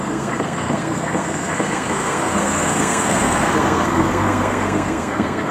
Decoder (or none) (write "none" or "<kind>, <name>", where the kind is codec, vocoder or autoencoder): codec, SNAC